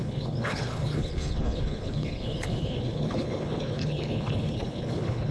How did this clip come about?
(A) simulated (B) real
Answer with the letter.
A